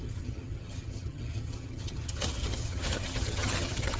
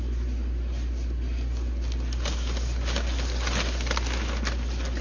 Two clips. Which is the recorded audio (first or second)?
second